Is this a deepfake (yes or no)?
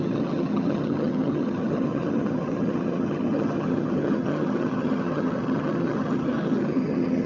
yes